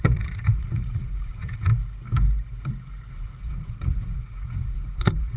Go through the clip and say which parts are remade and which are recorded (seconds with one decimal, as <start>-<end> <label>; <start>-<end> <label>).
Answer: 0.0-1.7 remade; 1.7-3.1 recorded; 3.1-5.4 remade